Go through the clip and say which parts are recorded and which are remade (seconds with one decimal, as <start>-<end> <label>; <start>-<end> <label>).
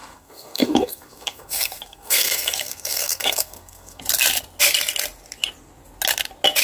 0.0-4.0 remade; 4.0-6.6 recorded